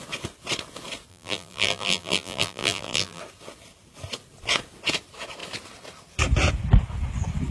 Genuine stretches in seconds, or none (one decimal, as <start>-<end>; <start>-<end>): 0.0-1.1; 3.2-7.5